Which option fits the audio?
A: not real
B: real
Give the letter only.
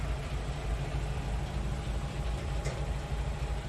B